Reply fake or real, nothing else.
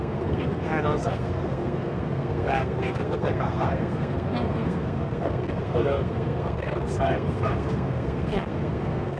fake